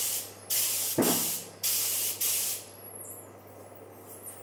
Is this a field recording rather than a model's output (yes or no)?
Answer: yes